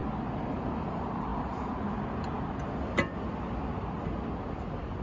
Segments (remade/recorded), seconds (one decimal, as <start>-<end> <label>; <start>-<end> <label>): 0.0-5.0 recorded